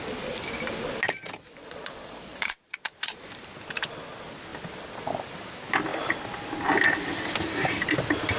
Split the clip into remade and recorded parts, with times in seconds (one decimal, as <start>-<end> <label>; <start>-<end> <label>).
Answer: 0.0-1.6 recorded; 1.6-3.2 remade; 3.2-8.4 recorded